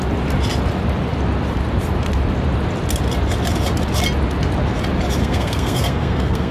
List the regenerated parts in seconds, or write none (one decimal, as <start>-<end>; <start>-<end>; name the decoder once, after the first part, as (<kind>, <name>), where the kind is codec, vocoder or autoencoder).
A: 5.2-6.5 (codec, SNAC)